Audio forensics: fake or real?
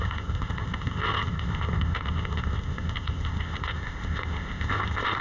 fake